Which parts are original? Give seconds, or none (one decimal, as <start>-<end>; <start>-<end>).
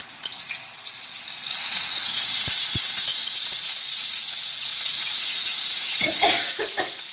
0.6-1.7